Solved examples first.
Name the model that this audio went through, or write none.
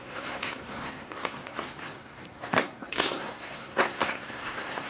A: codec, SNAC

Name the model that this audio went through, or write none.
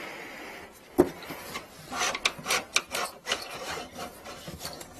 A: none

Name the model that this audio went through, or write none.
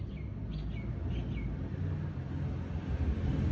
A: none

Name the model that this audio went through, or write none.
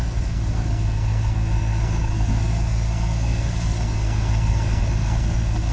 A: codec, SNAC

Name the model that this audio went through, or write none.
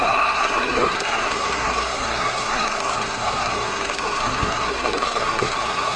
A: codec, SNAC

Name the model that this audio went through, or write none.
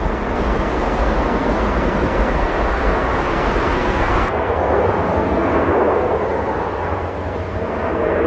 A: codec, SNAC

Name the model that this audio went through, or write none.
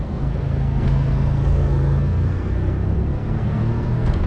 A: codec, SNAC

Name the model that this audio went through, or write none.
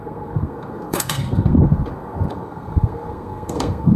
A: codec, SNAC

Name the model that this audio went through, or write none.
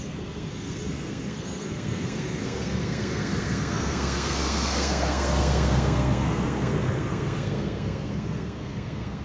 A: codec, SNAC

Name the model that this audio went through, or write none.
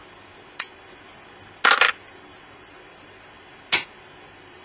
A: none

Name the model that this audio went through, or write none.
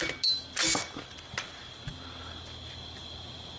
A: none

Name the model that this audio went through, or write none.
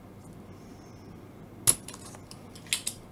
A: none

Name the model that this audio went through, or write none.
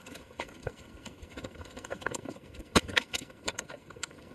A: codec, SNAC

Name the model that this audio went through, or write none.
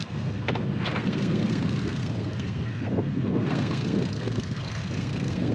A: codec, SNAC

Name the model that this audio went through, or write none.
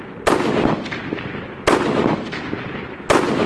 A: none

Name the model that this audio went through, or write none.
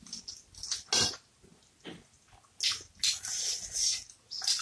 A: none